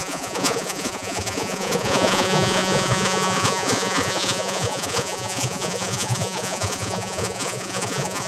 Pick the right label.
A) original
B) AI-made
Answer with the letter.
B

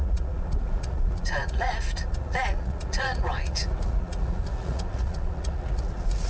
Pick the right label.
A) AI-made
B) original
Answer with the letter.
A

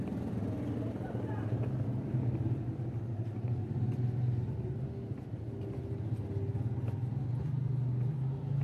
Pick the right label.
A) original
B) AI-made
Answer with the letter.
A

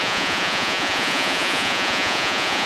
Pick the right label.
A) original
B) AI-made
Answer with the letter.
B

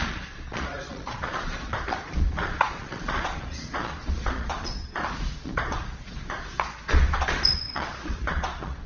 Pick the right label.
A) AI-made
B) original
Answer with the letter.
A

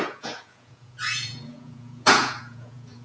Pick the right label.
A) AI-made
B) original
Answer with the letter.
A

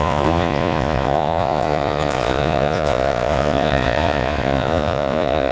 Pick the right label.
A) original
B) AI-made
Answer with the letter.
B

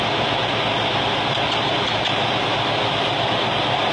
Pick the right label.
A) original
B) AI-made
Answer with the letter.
A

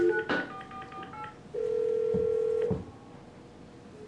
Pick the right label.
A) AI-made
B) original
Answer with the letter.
B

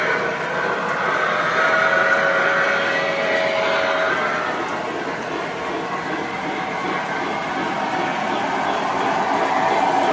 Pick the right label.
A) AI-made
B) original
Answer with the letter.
B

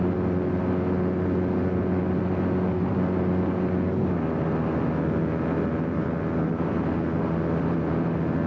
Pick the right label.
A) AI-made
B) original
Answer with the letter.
B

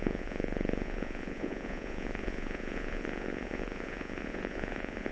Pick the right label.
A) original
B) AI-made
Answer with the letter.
B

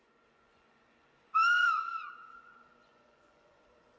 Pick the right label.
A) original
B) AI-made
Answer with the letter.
B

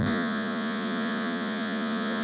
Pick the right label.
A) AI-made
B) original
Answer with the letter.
A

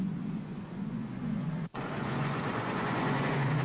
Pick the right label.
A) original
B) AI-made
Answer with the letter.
B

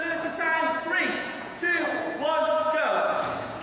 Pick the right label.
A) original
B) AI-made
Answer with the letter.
B